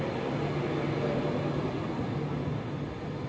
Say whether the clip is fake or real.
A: real